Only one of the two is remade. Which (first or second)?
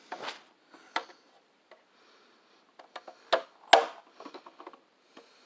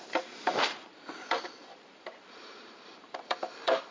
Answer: second